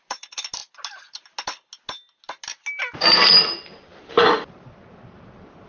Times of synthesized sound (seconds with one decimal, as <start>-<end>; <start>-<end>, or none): none